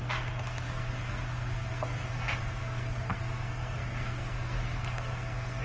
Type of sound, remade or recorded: remade